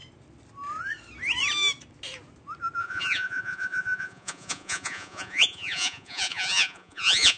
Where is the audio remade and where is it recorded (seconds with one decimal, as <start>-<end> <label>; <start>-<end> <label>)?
0.0-2.8 recorded; 2.8-7.4 remade